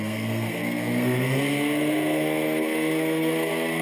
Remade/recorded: remade